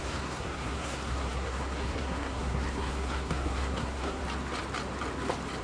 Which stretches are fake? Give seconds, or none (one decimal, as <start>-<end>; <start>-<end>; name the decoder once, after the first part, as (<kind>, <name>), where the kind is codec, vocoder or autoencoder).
0.0-4.2 (codec, SNAC)